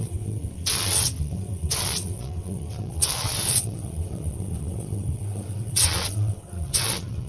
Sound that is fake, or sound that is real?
fake